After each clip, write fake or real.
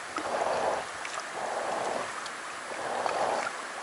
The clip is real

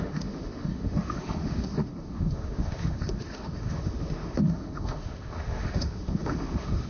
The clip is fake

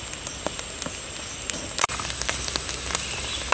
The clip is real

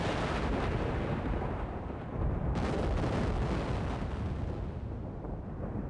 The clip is real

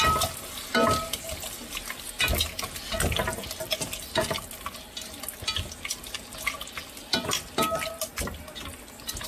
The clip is real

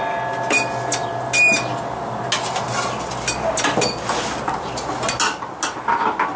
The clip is real